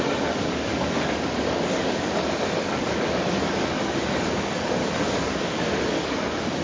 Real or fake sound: fake